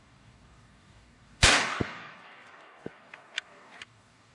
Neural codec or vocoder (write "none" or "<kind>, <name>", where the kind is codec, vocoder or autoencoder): codec, DAC